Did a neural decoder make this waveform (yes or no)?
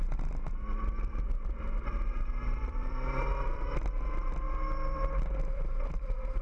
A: yes